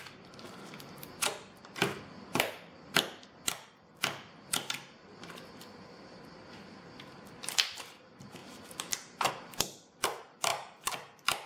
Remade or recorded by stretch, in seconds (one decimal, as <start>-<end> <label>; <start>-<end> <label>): 0.0-8.4 recorded; 8.4-9.3 remade; 9.3-10.5 recorded; 10.5-11.5 remade